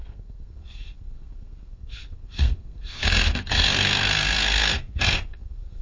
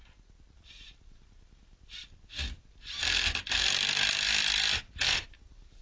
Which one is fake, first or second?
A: first